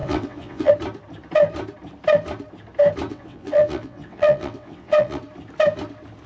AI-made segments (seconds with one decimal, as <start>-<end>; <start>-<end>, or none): 0.0-0.7; 3.1-5.2